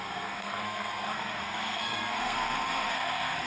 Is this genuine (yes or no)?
no